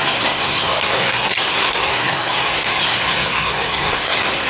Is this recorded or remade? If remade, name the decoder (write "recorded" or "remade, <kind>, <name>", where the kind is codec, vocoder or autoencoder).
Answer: remade, codec, SNAC